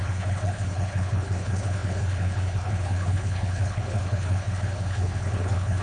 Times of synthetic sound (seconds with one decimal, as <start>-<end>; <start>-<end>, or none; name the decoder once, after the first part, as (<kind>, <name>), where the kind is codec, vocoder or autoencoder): 0.0-5.8 (codec, HILCodec)